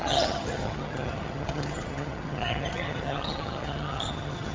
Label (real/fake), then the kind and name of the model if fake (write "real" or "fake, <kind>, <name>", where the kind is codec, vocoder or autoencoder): fake, vocoder, HiFi-GAN